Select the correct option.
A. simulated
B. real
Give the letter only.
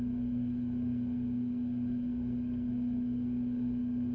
A